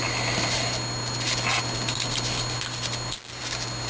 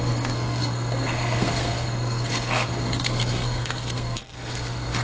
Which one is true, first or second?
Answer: first